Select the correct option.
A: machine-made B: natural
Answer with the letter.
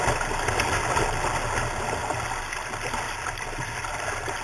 B